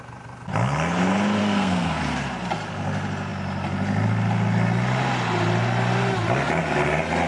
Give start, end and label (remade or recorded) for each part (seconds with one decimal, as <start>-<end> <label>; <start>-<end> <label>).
0.0-1.4 recorded; 1.4-2.0 remade; 2.0-7.3 recorded